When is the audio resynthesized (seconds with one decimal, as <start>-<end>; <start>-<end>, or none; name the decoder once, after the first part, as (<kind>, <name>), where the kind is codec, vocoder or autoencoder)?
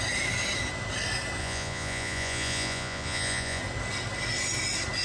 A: 1.4-3.6 (vocoder, Vocos)